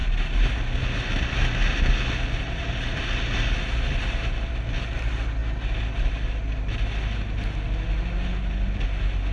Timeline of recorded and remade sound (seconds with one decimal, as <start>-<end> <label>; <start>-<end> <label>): 0.0-9.3 recorded